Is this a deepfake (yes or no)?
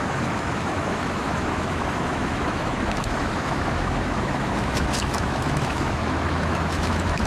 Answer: yes